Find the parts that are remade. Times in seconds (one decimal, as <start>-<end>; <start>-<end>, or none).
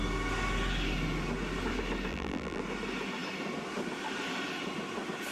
2.1-2.6